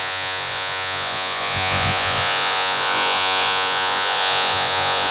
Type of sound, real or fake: fake